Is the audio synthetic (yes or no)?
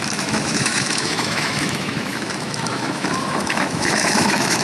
yes